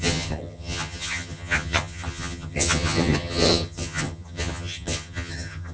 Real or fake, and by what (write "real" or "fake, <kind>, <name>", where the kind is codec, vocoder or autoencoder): fake, vocoder, HiFi-GAN